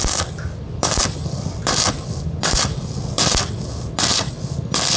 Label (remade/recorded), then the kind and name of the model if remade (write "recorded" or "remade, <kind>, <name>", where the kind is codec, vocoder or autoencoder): recorded